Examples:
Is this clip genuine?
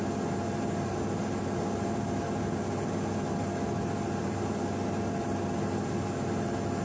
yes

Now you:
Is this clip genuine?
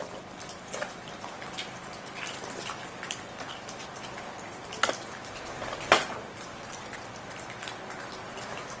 yes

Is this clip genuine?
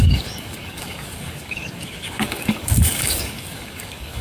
no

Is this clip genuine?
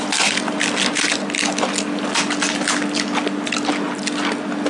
yes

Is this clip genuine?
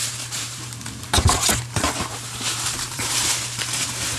no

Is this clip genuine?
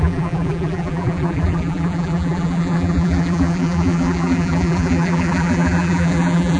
no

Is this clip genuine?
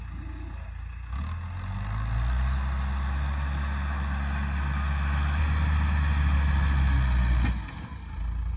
yes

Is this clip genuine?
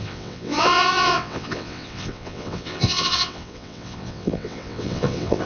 no